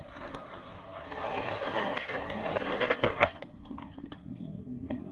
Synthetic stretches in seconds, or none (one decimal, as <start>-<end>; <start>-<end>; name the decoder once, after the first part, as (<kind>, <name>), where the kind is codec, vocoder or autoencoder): 0.0-5.1 (codec, SNAC)